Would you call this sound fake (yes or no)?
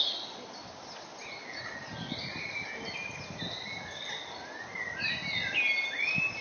no